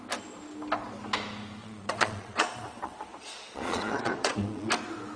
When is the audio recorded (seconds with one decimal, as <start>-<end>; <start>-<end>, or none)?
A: 0.0-1.6; 4.7-5.2